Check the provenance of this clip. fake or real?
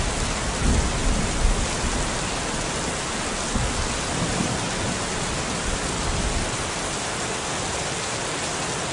real